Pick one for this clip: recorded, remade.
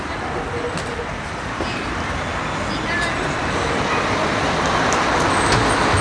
recorded